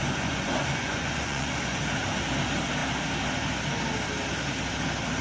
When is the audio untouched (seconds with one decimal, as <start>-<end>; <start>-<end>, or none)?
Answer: 1.8-5.2